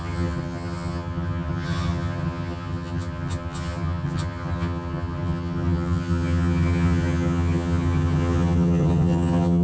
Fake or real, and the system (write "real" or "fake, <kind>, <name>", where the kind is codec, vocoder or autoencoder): fake, vocoder, HiFi-GAN